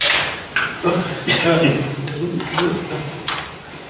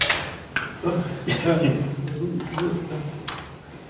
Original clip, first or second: second